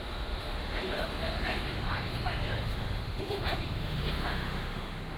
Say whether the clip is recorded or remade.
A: remade